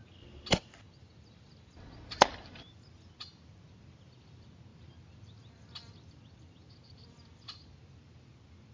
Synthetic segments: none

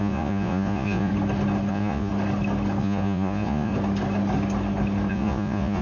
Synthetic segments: 0.0-1.1; 1.7-2.1; 2.8-3.7; 5.1-5.8

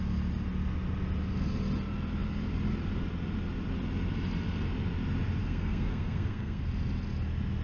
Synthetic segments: 5.4-6.6

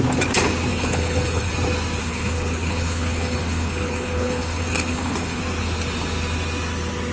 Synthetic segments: 0.7-1.5; 2.0-5.4

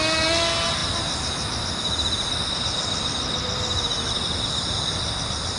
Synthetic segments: none

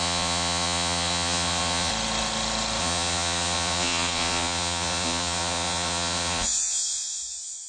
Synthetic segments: 0.0-1.9; 2.8-7.7

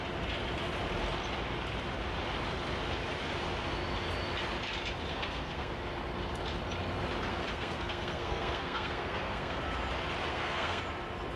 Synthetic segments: 5.1-5.7; 7.3-9.6; 10.3-10.8

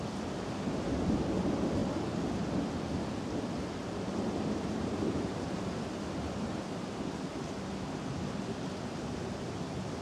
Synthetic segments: none